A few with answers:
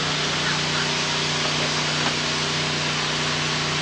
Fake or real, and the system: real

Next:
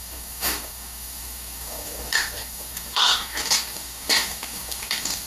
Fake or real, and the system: fake, codec, DAC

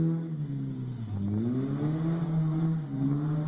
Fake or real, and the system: real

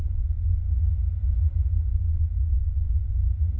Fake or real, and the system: real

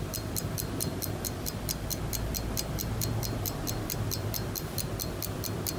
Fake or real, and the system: real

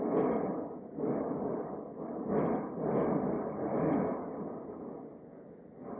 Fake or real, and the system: real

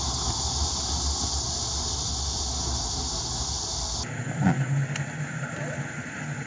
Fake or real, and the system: real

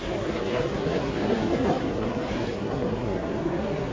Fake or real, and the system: fake, codec, SNAC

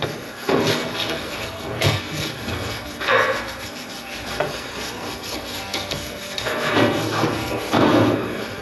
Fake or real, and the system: fake, codec, SNAC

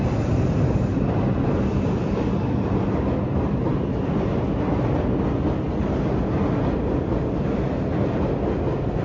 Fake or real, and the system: real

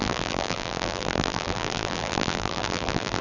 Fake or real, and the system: fake, vocoder, BigVGAN v2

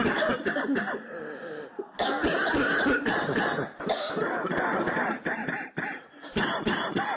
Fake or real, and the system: real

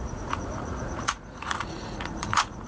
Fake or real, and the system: fake, vocoder, Vocos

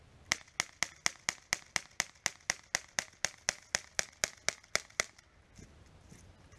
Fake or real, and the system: real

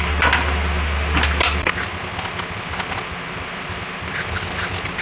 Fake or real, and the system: real